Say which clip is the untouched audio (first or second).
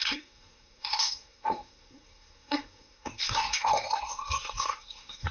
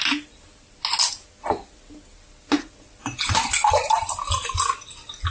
second